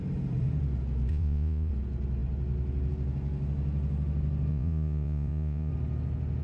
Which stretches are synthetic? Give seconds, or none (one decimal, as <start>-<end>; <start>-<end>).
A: 1.1-1.7; 4.5-5.7